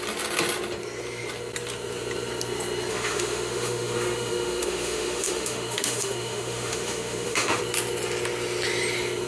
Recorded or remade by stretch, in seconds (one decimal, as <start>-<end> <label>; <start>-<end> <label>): 0.0-2.9 recorded; 2.9-7.6 remade; 7.6-9.3 recorded